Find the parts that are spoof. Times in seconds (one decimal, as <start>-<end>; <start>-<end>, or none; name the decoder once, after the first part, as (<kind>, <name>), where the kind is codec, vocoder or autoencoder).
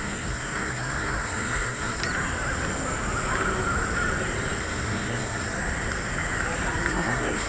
0.0-2.0 (codec, SNAC); 4.6-5.5; 6.9-7.5